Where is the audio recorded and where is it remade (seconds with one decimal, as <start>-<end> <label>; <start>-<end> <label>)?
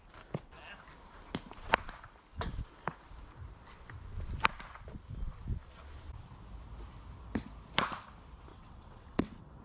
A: 0.0-8.5 recorded; 8.5-9.6 remade